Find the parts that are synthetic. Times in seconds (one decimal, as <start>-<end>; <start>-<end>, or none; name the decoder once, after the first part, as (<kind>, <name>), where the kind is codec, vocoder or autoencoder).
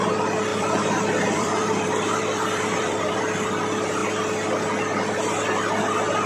0.5-3.6 (vocoder, BigVGAN v2)